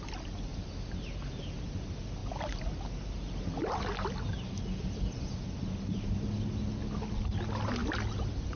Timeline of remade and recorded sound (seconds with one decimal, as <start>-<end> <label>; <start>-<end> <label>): 0.0-8.6 recorded